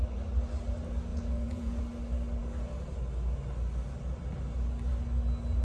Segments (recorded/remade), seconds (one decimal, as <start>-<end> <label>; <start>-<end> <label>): 0.0-1.1 recorded; 1.1-1.8 remade; 1.8-5.6 recorded